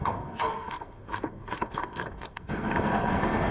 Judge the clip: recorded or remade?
remade